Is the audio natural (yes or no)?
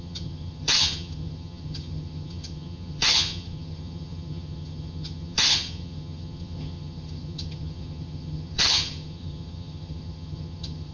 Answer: no